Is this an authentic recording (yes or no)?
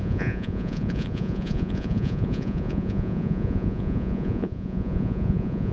no